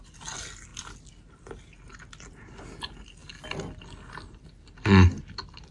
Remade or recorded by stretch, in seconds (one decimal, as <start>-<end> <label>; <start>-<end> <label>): 0.0-5.7 recorded